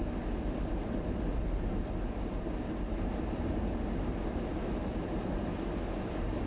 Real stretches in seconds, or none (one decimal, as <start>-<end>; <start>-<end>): 0.0-6.5

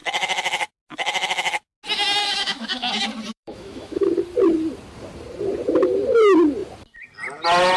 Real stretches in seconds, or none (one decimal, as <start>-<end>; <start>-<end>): 0.0-2.2; 2.9-3.3; 4.1-7.8

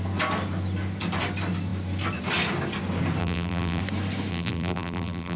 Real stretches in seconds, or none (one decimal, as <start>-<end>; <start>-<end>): 0.0-3.2; 3.8-4.3